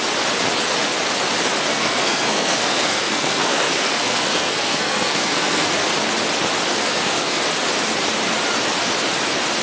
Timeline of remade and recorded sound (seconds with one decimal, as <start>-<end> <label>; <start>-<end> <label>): 0.0-1.7 recorded; 1.7-5.7 remade; 5.7-6.8 recorded; 6.8-7.4 remade; 7.4-9.6 recorded